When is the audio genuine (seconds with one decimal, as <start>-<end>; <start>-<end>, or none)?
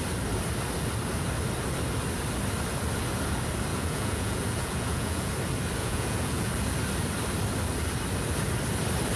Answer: 0.0-3.7; 5.3-5.8; 6.5-9.2